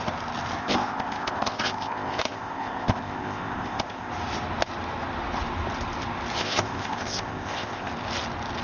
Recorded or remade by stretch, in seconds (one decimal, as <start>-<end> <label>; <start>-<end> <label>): 0.0-0.6 recorded; 0.6-4.1 remade; 4.1-6.4 recorded; 6.4-7.9 remade; 7.9-8.6 recorded